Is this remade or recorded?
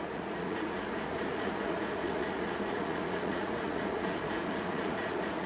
remade